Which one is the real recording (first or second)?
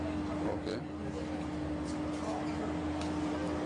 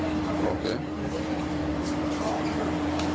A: first